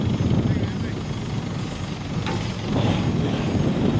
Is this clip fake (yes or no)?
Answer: no